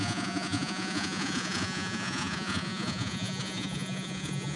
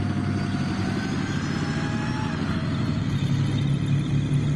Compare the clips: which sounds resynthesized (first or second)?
first